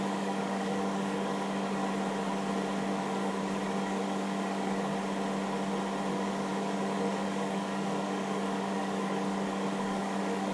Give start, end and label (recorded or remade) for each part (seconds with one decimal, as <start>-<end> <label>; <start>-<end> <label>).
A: 0.0-1.8 remade; 1.8-2.9 recorded; 2.9-4.9 remade; 4.9-6.1 recorded; 6.1-10.5 remade